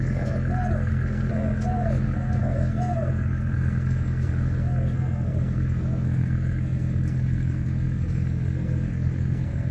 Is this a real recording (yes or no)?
no